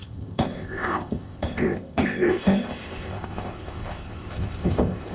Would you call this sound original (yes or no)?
no